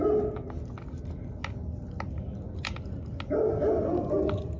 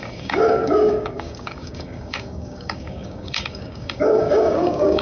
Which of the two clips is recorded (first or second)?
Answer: first